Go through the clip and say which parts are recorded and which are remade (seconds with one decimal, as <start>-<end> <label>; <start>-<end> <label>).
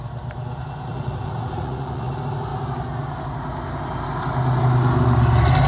0.0-0.9 recorded; 0.9-2.1 remade; 2.1-5.7 recorded